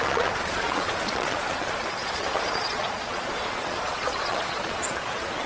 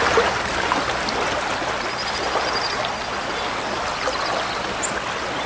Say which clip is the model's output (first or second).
first